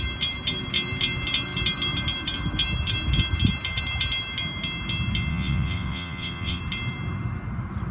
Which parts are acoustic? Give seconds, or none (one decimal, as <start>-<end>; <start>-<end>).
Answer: 0.0-5.3; 6.6-7.9